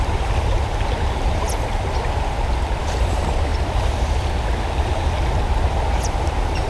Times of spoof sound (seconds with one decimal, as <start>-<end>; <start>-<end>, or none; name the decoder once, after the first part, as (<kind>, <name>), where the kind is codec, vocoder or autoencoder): 0.0-0.5 (vocoder, BigVGAN v2); 2.8-3.5; 6.2-6.7